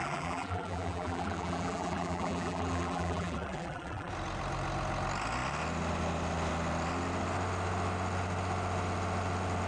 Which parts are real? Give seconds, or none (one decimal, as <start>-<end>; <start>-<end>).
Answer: 4.1-9.7